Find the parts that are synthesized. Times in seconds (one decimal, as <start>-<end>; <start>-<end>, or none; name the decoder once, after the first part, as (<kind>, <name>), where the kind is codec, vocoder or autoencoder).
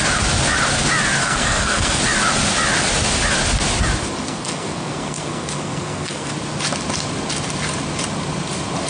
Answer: 1.2-2.0 (codec, SNAC); 4.2-6.3